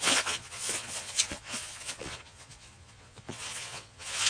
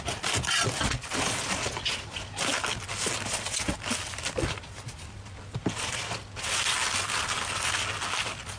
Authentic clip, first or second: second